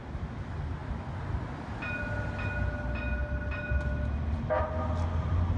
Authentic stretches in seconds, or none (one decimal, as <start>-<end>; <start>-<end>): 0.0-5.6